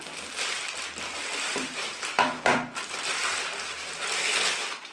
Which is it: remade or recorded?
recorded